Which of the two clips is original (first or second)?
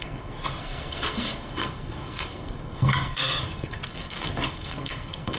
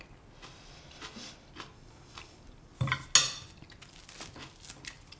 second